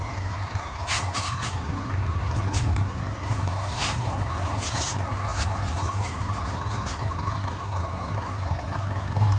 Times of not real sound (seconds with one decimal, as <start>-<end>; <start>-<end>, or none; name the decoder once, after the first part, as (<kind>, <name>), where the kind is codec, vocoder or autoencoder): 0.0-9.4 (codec, SNAC)